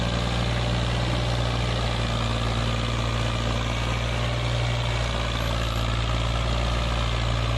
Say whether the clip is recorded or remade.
recorded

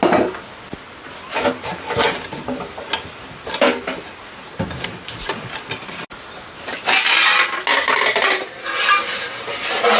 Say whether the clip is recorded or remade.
recorded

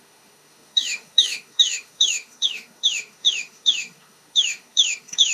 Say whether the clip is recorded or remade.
remade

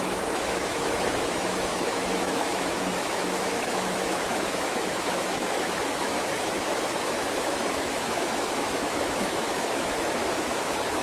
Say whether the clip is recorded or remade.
remade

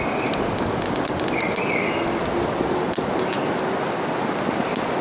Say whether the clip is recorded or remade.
recorded